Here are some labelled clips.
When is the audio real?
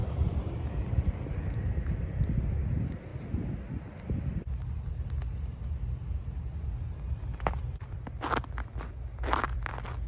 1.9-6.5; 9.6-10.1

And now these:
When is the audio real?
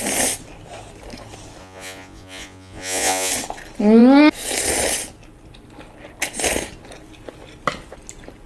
0.0-1.6; 3.3-8.5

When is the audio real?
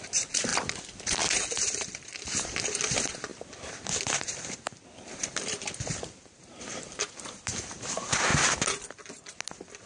8.3-9.9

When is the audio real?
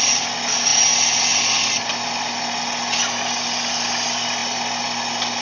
0.0-5.4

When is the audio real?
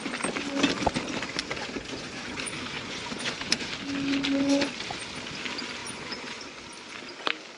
0.0-1.4; 3.7-5.8; 6.6-7.6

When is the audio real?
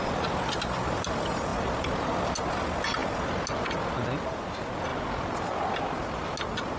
0.0-6.8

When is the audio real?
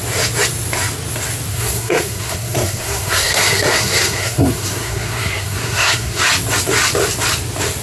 0.0-1.5; 6.2-7.8